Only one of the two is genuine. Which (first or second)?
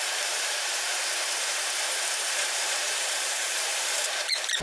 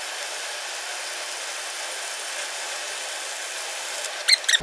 second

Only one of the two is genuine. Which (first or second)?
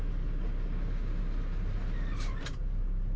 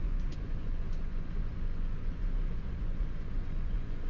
first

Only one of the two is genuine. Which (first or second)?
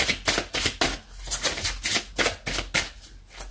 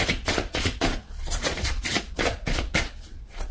first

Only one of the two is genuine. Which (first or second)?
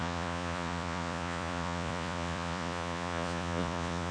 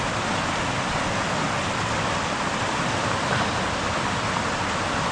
second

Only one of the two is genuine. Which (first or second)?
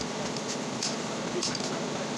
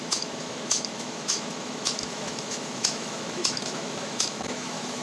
first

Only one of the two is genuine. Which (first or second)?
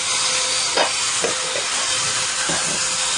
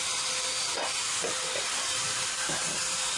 first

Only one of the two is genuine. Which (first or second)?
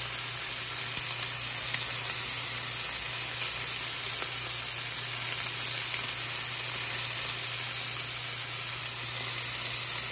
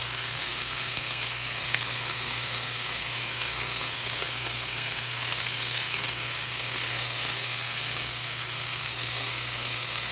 first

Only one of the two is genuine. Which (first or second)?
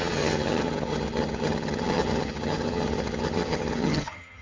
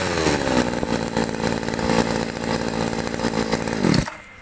second